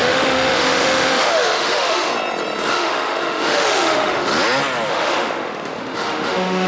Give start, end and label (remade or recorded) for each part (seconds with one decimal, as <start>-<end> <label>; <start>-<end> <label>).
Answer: 0.0-2.1 remade; 2.1-2.7 recorded; 2.7-4.3 remade; 4.3-4.9 recorded; 4.9-6.7 remade